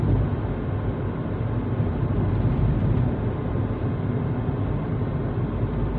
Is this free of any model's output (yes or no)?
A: yes